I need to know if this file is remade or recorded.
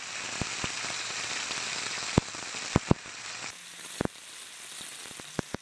recorded